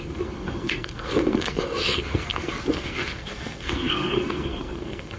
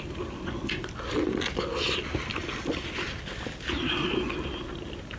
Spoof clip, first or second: first